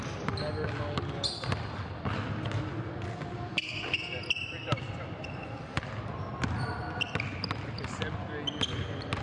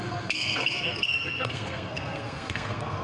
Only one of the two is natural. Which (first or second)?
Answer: first